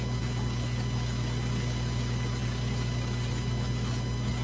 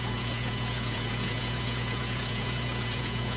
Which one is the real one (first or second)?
first